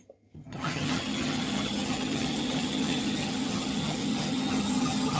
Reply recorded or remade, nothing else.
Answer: remade